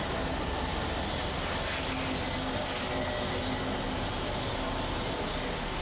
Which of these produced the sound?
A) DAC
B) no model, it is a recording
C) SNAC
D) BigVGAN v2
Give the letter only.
B